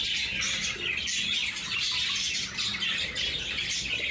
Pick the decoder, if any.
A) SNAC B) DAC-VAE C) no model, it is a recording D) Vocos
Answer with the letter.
C